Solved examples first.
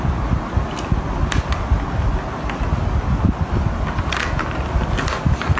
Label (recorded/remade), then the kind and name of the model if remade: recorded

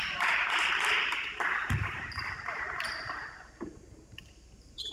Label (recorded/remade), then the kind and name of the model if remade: remade, vocoder, BigVGAN v2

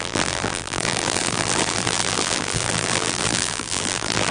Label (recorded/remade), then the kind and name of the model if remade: remade, vocoder, BigVGAN v2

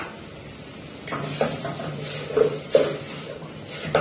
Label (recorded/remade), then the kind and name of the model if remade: recorded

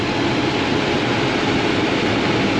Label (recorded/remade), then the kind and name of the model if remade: recorded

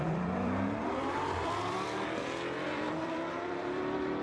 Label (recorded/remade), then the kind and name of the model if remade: remade, vocoder, BigVGAN v2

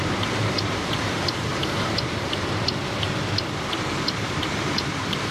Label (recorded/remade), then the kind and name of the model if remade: remade, vocoder, BigVGAN v2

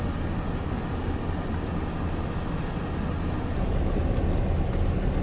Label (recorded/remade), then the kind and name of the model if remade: recorded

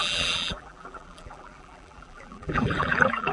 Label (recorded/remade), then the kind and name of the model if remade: remade, vocoder, BigVGAN v2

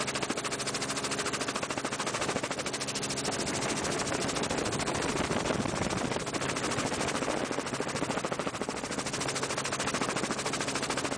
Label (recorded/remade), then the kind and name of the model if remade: recorded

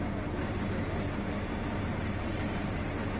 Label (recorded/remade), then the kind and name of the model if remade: recorded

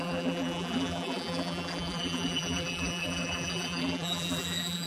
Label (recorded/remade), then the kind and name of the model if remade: remade, vocoder, BigVGAN v2